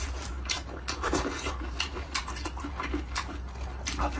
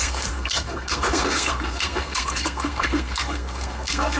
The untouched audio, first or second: first